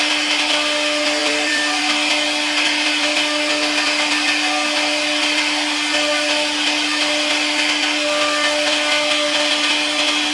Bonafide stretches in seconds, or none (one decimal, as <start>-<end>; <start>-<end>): 0.0-1.2; 1.8-10.3